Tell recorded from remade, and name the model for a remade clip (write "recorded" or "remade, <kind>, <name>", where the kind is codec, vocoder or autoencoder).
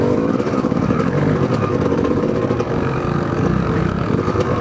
remade, codec, DAC